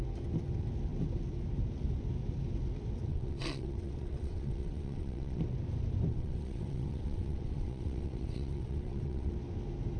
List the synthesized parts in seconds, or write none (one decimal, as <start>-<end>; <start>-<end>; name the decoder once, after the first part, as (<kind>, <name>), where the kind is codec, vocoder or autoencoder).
3.1-5.4 (vocoder, WaveNeXt); 6.1-9.3